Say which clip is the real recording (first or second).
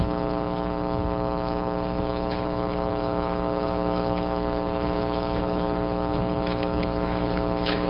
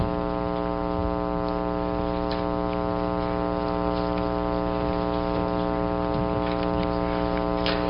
second